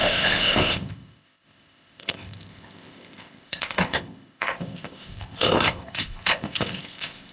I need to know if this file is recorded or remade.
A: remade